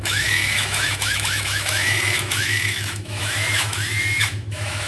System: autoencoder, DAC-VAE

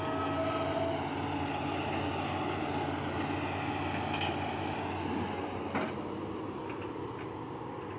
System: none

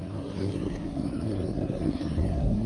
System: codec, SNAC